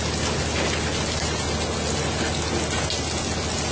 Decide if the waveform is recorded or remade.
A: recorded